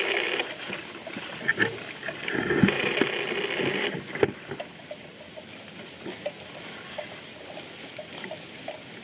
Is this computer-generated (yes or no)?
no